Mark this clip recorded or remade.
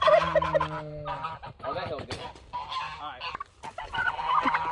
recorded